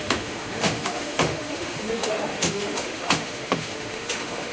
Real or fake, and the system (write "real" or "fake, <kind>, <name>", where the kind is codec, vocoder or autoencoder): fake, autoencoder, DAC-VAE